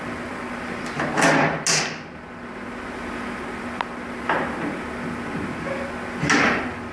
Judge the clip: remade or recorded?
recorded